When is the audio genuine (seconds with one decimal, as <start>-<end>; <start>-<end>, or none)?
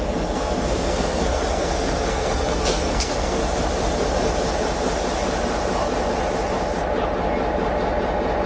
3.4-8.5